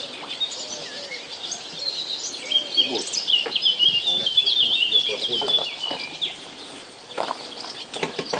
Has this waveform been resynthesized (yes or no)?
no